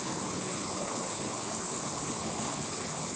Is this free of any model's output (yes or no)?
no